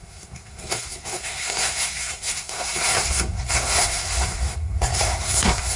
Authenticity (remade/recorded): remade